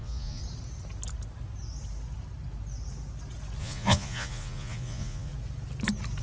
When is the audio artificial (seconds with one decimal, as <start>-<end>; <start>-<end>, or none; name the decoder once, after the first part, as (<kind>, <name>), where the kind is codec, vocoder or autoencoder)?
0.0-0.4 (vocoder, Vocos); 3.6-5.3